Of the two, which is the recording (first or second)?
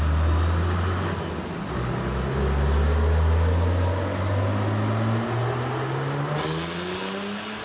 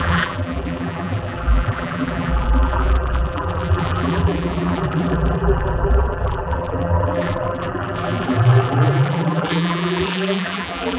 first